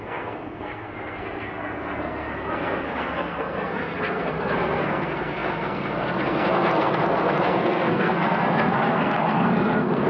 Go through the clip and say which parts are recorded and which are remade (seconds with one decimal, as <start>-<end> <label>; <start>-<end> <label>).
0.0-10.1 remade